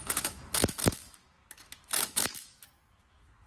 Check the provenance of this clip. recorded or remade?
remade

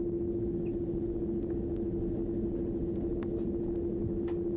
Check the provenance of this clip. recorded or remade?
recorded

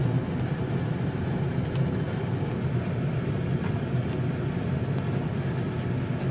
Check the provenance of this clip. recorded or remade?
recorded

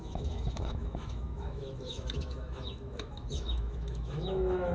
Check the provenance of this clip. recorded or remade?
remade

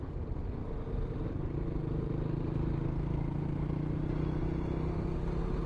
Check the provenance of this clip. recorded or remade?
recorded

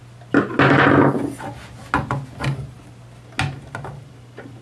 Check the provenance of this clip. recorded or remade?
recorded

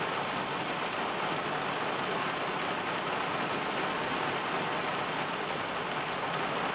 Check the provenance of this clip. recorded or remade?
recorded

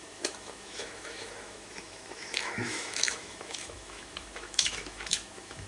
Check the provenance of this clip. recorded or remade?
remade